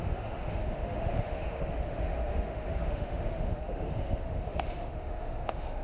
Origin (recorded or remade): remade